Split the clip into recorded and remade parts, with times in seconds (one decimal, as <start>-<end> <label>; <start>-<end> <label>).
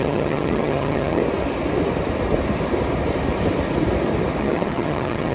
0.0-1.2 remade; 1.2-4.4 recorded; 4.4-5.3 remade